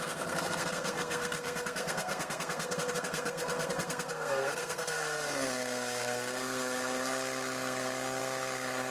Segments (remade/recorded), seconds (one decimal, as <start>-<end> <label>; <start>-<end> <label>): 0.0-8.9 remade